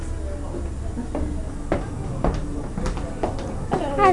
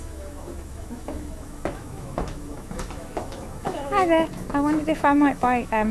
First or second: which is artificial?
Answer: second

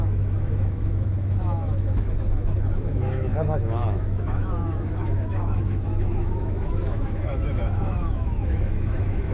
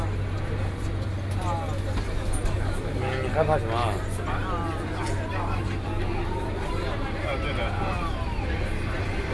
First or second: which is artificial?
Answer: first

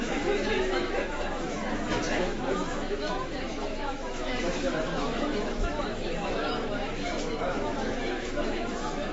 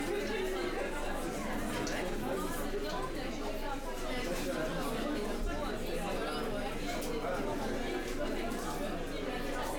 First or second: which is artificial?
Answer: first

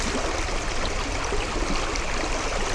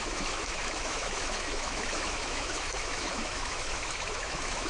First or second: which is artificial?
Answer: second